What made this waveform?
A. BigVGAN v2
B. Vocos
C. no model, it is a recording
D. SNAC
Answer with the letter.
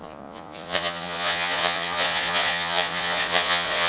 B